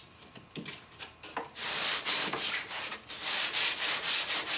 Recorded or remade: remade